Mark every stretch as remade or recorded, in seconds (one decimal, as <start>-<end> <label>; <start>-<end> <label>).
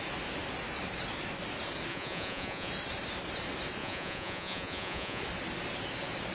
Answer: 0.0-1.9 recorded; 1.9-2.7 remade; 2.7-3.8 recorded; 3.8-5.2 remade; 5.2-6.3 recorded